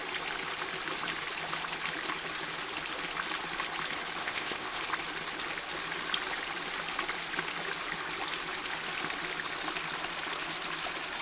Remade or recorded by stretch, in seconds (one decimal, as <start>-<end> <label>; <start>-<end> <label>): 0.0-4.2 recorded; 4.2-4.8 remade; 4.8-11.2 recorded